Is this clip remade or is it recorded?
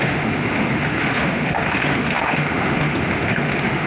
remade